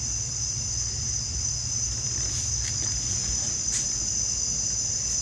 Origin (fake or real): fake